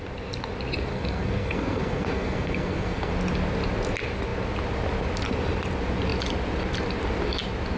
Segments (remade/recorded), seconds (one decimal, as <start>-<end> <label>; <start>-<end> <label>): 0.0-0.9 recorded; 0.9-3.1 remade; 3.1-7.8 recorded